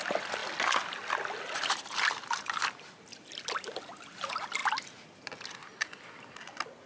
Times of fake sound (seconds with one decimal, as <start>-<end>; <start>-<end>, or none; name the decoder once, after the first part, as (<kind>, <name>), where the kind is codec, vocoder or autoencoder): none